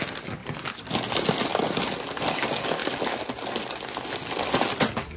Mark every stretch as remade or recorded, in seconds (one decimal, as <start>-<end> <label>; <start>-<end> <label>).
0.0-0.4 recorded; 0.4-0.9 remade; 0.9-2.8 recorded; 2.8-3.3 remade; 3.3-5.2 recorded